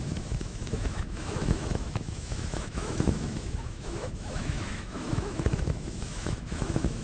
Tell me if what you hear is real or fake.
fake